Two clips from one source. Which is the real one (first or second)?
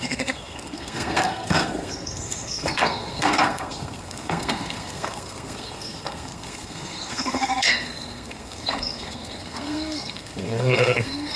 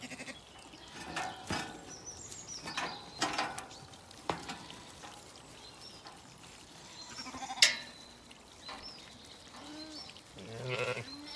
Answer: second